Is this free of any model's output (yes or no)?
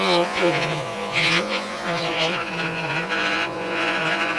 no